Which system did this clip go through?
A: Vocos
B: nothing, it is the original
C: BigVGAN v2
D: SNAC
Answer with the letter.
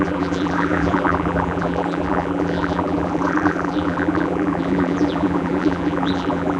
C